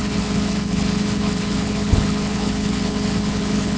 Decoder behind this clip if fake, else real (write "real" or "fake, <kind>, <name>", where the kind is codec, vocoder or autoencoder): fake, codec, HILCodec